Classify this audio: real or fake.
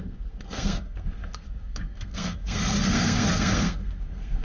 fake